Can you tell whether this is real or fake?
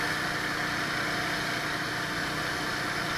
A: real